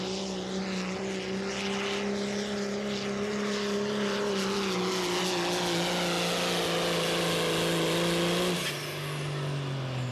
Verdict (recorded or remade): recorded